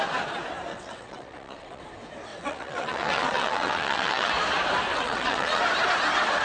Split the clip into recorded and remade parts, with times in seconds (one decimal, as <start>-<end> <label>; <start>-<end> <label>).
0.0-0.7 recorded; 0.7-1.8 remade; 1.8-2.3 recorded; 2.3-4.3 remade; 4.3-4.9 recorded; 4.9-5.6 remade; 5.6-6.4 recorded